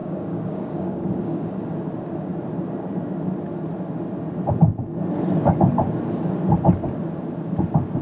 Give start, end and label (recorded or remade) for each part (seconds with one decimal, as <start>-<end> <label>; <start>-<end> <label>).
0.0-1.2 remade; 1.2-8.0 recorded